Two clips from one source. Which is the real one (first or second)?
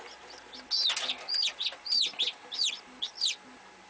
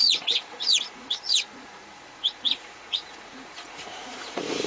first